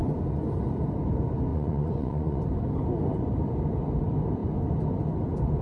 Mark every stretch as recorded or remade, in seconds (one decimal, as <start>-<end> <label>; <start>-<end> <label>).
0.0-1.5 recorded; 1.5-2.4 remade; 2.4-5.6 recorded